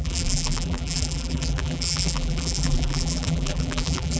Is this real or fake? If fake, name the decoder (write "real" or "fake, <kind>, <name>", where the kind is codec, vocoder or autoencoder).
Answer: fake, vocoder, BigVGAN v2